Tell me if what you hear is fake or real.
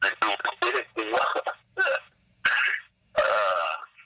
real